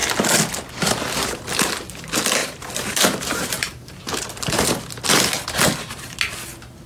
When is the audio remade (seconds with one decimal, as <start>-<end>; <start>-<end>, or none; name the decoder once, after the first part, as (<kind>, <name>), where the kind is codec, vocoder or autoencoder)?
2.4-4.8 (vocoder, BigVGAN v2)

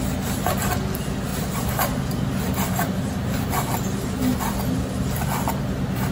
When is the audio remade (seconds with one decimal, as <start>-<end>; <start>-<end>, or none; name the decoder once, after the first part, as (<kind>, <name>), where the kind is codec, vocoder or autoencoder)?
1.3-4.2 (vocoder, BigVGAN v2)

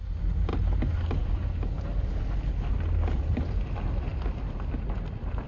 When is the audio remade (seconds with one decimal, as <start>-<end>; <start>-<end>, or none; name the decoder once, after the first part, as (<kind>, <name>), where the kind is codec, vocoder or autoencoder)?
4.1-5.5 (vocoder, BigVGAN v2)

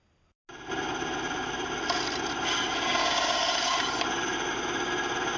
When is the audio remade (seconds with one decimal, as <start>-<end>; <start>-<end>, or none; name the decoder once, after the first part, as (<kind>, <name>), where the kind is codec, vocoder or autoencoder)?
2.9-4.5 (vocoder, BigVGAN v2)